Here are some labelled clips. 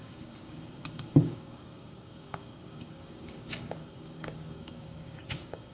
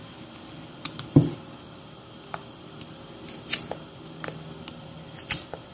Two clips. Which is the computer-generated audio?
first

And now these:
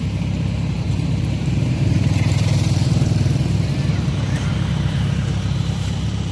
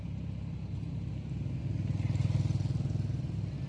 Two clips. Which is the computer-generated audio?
first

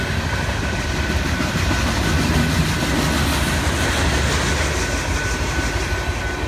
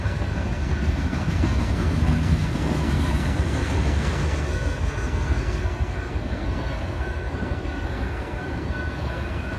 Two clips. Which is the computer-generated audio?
second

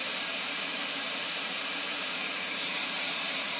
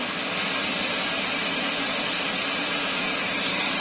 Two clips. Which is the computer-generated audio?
first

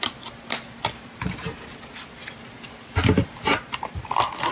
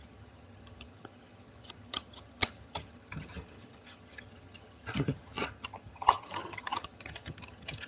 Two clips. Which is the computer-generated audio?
second